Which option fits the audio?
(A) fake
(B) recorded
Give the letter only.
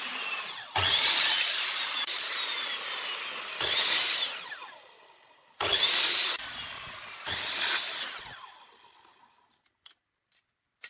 B